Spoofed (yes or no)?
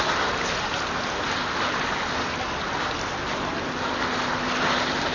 no